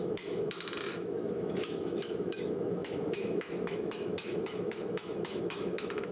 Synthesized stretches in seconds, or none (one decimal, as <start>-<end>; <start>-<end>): 0.0-6.1